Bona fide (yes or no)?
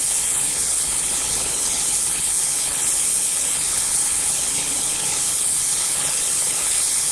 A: no